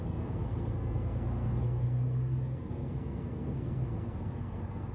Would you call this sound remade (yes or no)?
yes